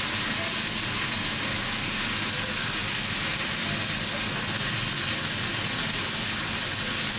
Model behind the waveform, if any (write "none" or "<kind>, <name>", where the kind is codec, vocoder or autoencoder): none